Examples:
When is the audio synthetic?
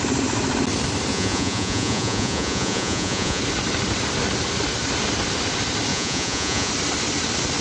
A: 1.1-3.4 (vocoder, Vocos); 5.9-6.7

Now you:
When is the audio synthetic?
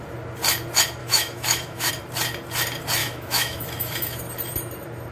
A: 1.0-1.9 (autoencoder, DAC-VAE); 3.0-4.2